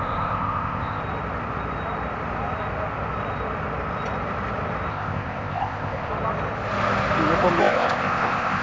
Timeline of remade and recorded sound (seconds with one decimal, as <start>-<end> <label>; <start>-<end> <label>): 0.0-1.0 remade; 1.0-4.9 recorded; 4.9-6.1 remade; 6.1-7.6 recorded; 7.6-8.6 remade